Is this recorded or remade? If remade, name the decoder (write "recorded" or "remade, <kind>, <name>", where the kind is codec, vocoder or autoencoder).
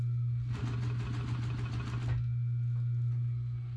recorded